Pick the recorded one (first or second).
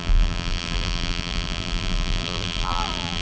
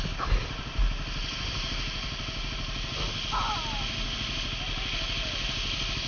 second